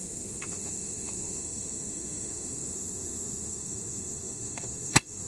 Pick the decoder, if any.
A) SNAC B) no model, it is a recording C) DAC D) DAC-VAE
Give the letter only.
D